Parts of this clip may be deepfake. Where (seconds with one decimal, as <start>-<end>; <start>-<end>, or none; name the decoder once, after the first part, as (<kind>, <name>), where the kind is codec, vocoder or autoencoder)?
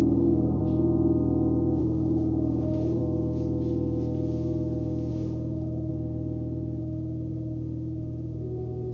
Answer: 0.0-0.6 (autoencoder, DAC-VAE); 1.8-3.0; 5.1-5.9; 6.8-8.9